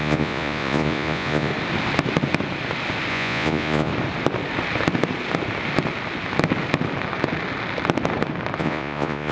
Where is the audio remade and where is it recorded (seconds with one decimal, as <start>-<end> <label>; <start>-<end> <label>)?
0.0-1.5 remade; 1.5-3.1 recorded; 3.1-3.9 remade; 3.9-8.6 recorded; 8.6-9.3 remade